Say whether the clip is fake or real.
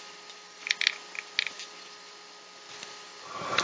real